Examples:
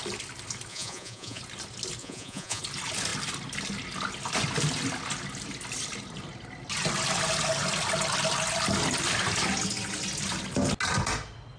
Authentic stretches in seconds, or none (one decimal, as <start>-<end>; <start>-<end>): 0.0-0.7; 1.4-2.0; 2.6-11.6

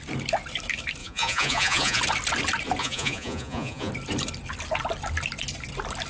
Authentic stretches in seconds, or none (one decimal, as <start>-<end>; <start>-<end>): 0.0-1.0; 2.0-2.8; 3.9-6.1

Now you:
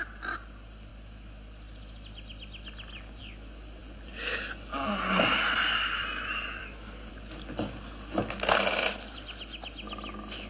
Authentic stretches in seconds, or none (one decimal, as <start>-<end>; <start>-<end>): 0.0-6.6; 7.1-10.5